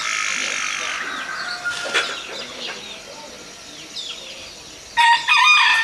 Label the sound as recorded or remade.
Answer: recorded